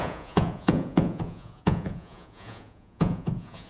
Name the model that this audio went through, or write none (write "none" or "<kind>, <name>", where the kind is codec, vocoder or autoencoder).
vocoder, Vocos